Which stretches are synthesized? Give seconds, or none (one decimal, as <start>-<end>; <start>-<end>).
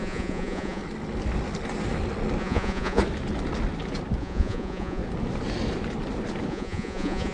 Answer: 0.0-0.8; 2.4-3.0; 4.2-5.0; 6.5-7.3